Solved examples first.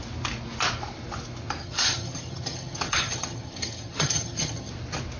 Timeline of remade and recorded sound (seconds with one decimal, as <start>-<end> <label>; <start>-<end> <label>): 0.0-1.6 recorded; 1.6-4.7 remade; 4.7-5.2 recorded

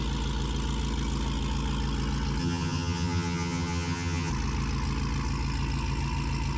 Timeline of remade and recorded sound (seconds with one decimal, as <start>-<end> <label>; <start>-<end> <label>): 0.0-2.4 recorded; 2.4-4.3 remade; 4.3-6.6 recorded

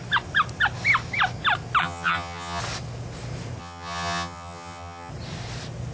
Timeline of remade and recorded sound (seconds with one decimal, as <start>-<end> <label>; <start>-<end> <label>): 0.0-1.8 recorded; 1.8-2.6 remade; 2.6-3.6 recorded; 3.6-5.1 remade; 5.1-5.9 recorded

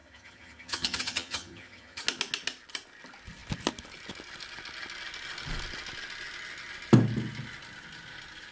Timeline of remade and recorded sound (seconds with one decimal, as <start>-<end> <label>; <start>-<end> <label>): 0.0-2.0 remade; 2.0-8.5 recorded